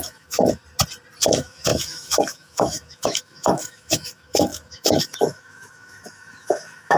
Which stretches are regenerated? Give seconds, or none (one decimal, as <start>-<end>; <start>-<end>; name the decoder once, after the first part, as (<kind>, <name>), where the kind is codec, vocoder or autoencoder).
0.0-0.6 (autoencoder, DAC-VAE); 1.2-7.0

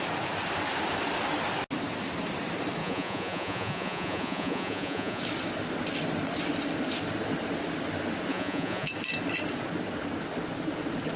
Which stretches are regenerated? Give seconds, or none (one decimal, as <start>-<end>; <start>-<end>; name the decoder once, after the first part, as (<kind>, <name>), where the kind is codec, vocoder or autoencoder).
2.8-5.2 (vocoder, Vocos); 8.3-8.9

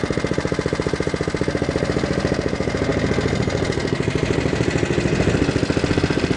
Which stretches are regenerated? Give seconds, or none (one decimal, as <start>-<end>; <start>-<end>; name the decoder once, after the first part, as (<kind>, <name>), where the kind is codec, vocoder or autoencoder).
0.0-2.9 (vocoder, BigVGAN v2); 6.0-6.4